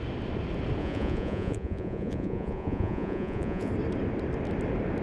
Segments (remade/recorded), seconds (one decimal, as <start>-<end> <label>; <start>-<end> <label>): 0.0-0.8 recorded; 0.8-3.7 remade; 3.7-5.0 recorded